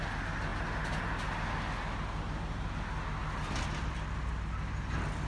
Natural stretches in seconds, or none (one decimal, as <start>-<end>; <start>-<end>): 0.0-5.3